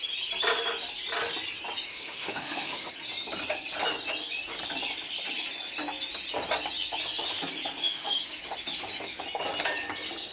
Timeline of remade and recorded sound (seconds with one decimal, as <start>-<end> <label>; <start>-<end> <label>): 0.0-1.9 recorded; 1.9-2.9 remade; 2.9-7.8 recorded; 7.8-8.4 remade; 8.4-10.3 recorded